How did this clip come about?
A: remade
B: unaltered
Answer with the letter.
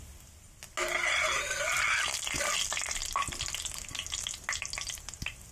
B